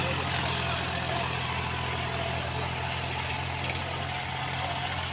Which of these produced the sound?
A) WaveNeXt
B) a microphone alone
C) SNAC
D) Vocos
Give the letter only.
B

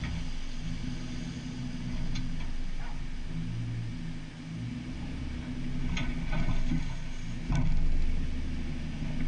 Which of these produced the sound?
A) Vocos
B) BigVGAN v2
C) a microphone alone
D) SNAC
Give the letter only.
C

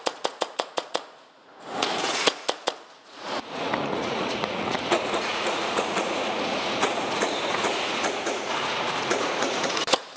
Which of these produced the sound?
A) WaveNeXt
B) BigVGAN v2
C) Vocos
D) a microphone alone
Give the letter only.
C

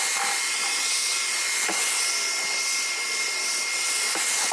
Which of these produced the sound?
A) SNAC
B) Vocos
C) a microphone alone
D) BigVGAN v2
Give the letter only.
C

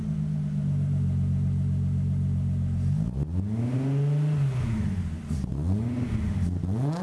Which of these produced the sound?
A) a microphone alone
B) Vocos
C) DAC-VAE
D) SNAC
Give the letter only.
A